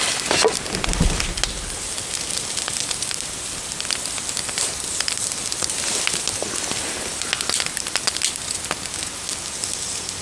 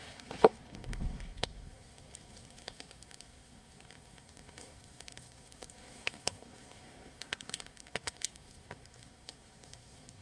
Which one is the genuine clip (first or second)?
first